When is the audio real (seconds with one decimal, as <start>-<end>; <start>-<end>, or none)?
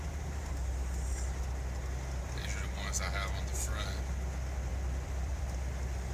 0.0-0.6; 1.4-4.7; 5.4-6.1